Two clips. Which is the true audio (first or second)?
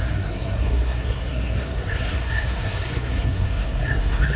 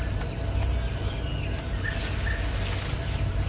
second